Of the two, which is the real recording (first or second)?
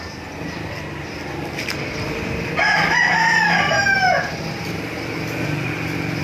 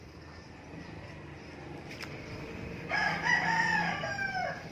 first